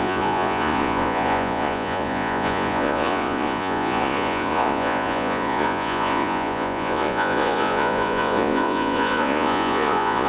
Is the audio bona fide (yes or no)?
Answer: no